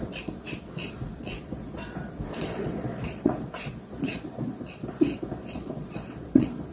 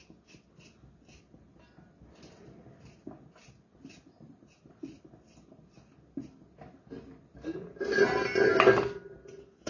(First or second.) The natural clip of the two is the second